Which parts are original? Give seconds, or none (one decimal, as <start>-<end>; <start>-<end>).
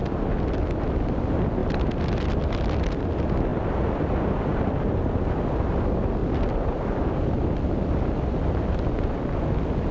0.0-1.6; 2.4-3.5; 4.2-9.9